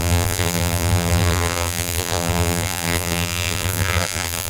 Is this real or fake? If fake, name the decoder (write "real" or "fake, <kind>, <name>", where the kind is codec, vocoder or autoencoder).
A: fake, vocoder, BigVGAN v2